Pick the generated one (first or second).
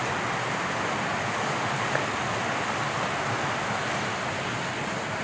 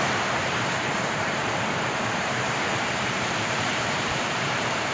second